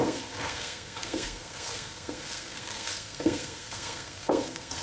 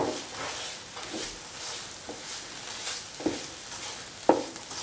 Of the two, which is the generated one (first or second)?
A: first